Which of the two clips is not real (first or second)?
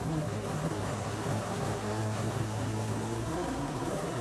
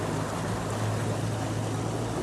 first